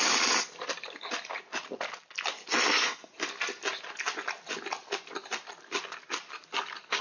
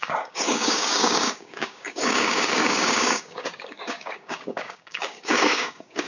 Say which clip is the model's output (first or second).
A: second